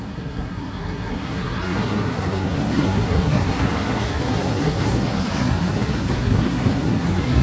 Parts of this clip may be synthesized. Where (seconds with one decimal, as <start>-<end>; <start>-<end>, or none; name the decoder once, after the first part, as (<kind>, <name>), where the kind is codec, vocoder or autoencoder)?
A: 0.0-7.4 (codec, SNAC)